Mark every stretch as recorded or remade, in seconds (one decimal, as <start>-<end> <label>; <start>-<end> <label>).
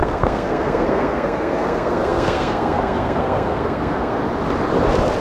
0.0-4.2 remade; 4.2-5.2 recorded